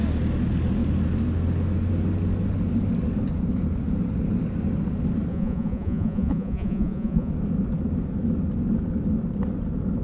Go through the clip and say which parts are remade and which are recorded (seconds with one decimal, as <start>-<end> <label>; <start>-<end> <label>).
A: 0.0-5.3 recorded; 5.3-7.3 remade; 7.3-10.0 recorded